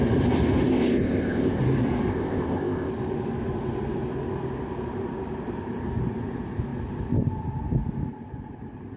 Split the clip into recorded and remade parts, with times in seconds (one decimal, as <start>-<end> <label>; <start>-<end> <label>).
0.0-0.7 recorded; 0.7-1.6 remade; 1.6-2.1 recorded; 2.1-2.9 remade; 2.9-9.0 recorded